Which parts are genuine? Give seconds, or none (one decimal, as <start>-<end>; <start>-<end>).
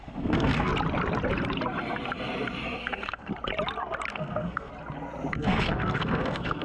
0.7-2.8; 3.3-4.1; 4.7-5.3